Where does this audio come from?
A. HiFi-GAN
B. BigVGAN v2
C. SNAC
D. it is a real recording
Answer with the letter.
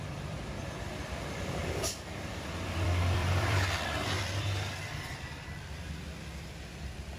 B